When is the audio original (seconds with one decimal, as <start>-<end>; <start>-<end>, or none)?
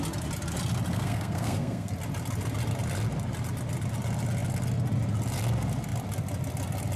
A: 0.0-0.9; 1.9-7.0